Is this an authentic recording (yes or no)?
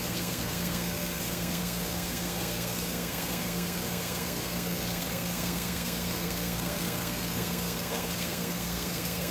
no